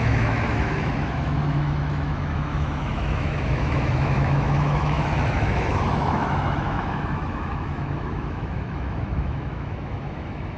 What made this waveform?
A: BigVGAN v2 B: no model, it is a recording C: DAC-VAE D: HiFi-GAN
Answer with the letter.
C